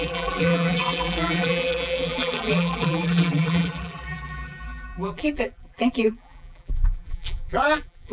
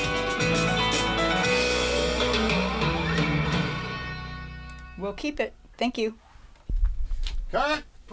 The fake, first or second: first